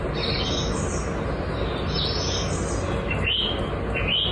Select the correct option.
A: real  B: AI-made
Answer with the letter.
A